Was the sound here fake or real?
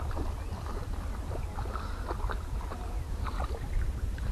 real